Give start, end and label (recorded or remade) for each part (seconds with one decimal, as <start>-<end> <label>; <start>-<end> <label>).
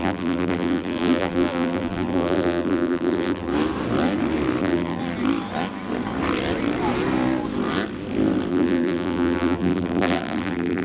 0.0-3.5 remade; 3.5-4.6 recorded; 4.6-5.0 remade; 5.0-8.5 recorded; 8.5-10.8 remade